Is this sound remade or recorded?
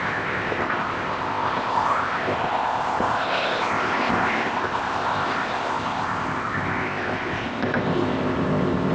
remade